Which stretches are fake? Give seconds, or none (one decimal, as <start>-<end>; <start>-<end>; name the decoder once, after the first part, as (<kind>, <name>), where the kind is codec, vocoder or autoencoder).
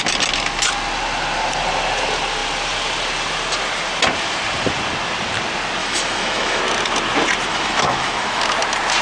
5.8-6.6 (autoencoder, DAC-VAE); 7.5-8.4